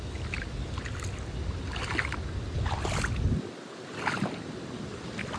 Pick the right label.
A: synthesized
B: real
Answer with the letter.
B